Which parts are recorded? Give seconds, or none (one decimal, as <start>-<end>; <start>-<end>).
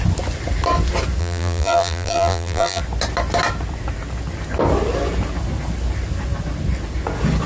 0.0-1.2; 2.8-7.5